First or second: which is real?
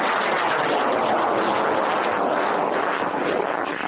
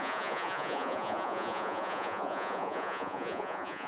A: first